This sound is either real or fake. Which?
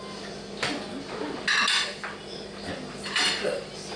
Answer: real